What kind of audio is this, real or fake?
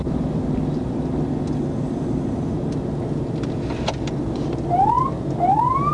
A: real